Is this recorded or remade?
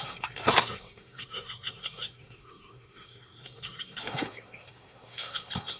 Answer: remade